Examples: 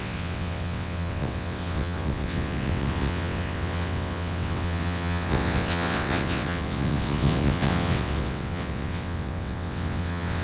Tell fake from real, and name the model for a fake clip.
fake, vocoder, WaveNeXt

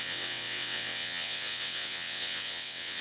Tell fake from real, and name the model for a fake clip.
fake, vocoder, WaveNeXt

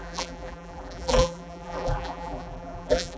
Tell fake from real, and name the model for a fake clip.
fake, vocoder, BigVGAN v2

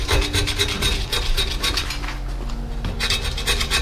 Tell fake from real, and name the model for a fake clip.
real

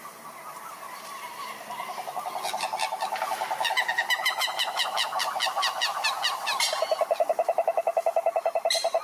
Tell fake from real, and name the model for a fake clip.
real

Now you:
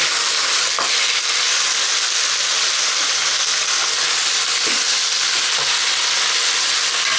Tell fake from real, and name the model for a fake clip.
real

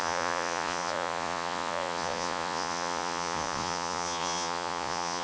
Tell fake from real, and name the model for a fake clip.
fake, vocoder, Vocos